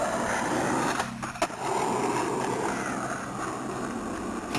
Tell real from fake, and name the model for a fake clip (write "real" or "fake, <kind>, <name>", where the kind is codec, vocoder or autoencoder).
real